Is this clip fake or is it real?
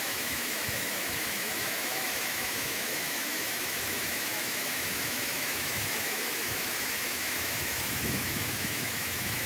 fake